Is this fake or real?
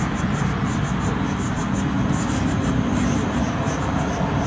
real